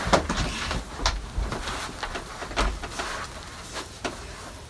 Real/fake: real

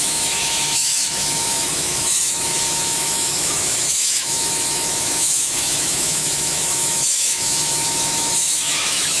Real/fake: fake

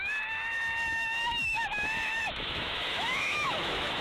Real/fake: fake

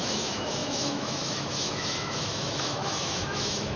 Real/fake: fake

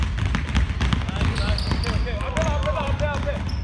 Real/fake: real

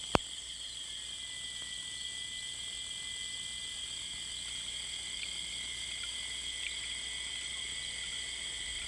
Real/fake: real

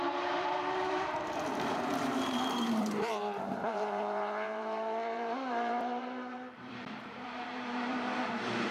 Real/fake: fake